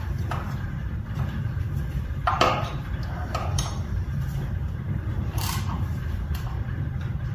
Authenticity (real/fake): fake